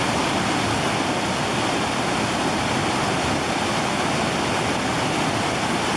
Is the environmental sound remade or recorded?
recorded